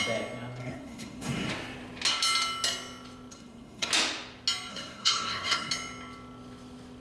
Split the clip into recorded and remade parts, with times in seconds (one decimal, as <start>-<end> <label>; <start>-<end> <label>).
0.0-0.6 recorded; 0.6-1.5 remade; 1.5-3.3 recorded; 3.3-3.9 remade; 3.9-4.7 recorded; 4.7-5.7 remade; 5.7-7.0 recorded